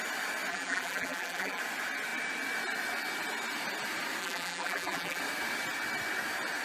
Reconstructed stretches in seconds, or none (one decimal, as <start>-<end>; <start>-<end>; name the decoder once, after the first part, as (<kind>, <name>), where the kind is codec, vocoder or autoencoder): 0.5-1.6 (vocoder, BigVGAN v2); 4.2-5.2